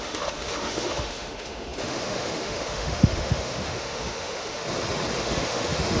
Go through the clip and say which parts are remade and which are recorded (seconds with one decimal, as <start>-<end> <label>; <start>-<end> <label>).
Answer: 0.0-4.6 remade; 4.6-5.2 recorded; 5.2-6.0 remade